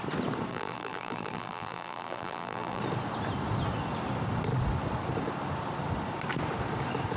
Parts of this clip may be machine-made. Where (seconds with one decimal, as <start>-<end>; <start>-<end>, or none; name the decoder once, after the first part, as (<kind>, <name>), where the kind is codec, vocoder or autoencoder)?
0.5-2.8 (vocoder, BigVGAN v2)